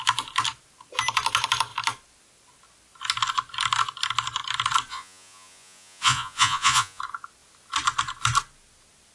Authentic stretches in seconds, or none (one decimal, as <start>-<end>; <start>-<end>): 0.0-4.9; 7.0-9.1